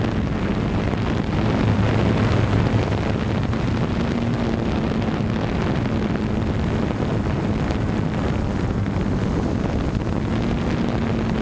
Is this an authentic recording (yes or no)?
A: yes